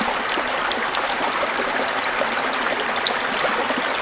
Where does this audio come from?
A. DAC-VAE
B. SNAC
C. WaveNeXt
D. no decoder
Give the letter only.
D